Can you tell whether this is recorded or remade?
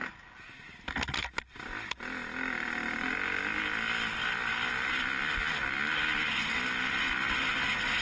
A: recorded